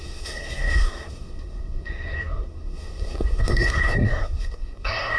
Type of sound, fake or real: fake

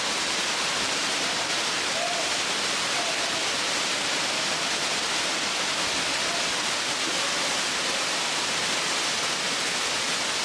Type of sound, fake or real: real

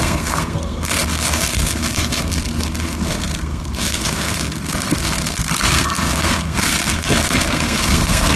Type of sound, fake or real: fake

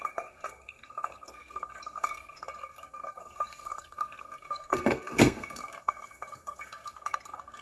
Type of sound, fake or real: fake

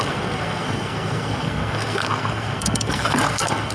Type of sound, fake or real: fake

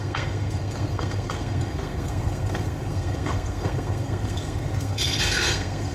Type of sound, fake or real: fake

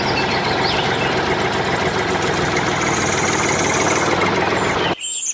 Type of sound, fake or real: real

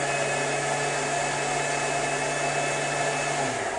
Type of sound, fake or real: real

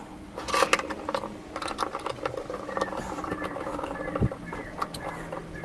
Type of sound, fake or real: real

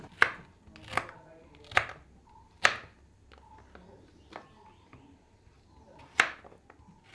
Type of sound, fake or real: real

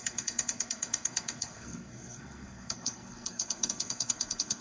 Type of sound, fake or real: fake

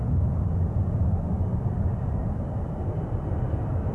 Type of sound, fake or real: real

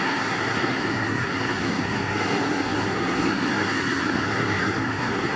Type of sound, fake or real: fake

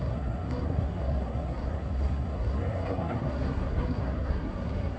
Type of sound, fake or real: fake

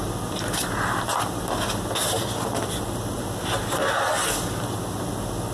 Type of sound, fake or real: real